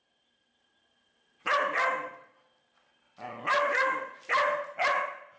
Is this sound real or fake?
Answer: real